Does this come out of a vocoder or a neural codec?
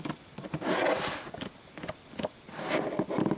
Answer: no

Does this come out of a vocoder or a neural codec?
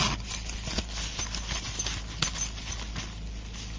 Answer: no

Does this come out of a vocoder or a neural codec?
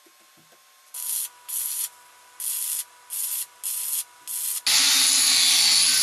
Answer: no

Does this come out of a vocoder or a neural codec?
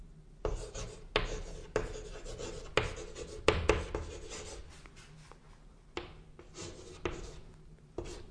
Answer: no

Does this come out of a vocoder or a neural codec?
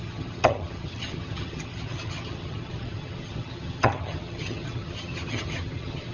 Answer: yes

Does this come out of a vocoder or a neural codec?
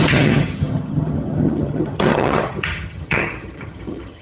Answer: yes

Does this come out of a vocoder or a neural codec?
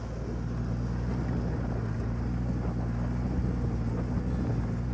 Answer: no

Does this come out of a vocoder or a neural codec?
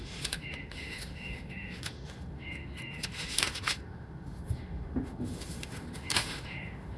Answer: yes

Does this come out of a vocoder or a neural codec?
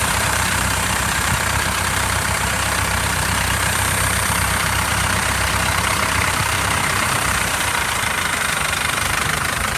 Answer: yes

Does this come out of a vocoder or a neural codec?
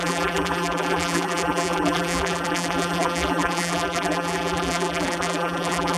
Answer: yes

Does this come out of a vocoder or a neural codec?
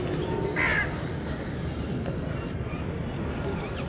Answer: no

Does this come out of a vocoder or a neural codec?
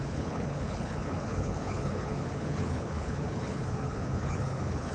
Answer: yes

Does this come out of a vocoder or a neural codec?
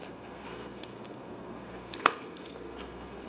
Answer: yes